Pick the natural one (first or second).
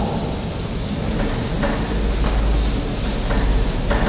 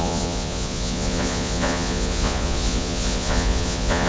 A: first